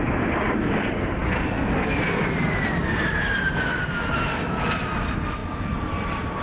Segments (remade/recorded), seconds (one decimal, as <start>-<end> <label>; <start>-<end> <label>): 0.0-6.4 recorded